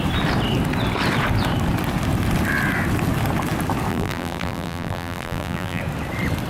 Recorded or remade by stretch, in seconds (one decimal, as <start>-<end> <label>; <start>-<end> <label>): 0.0-3.9 recorded; 3.9-5.8 remade; 5.8-6.5 recorded